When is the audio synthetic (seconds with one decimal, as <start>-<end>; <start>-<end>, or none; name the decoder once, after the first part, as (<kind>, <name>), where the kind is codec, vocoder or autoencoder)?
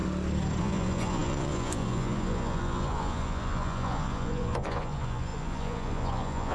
0.6-6.5 (vocoder, Vocos)